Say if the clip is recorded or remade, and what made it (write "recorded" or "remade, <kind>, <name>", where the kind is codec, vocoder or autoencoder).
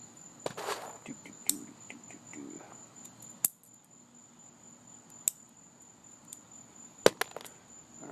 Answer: recorded